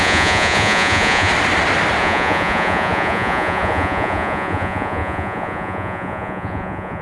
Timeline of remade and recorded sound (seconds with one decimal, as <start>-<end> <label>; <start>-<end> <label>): 0.0-1.3 remade; 1.3-2.0 recorded; 2.0-7.0 remade